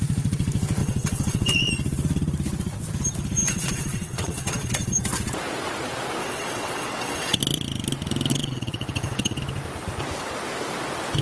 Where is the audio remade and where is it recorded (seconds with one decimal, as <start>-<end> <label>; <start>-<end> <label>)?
0.0-0.8 recorded; 0.8-1.7 remade; 1.7-3.4 recorded; 3.4-4.9 remade; 4.9-6.2 recorded; 6.2-7.4 remade; 7.4-8.3 recorded; 8.3-9.4 remade; 9.4-11.2 recorded